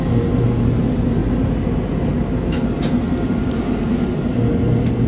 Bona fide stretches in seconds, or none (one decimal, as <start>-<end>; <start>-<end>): 0.0-5.1